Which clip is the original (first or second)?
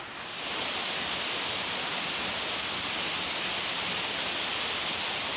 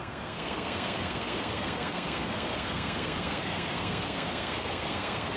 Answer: first